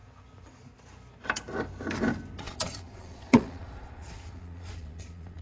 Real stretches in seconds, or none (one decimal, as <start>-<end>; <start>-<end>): 0.0-2.4